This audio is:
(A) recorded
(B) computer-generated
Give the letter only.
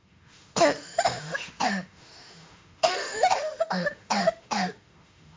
B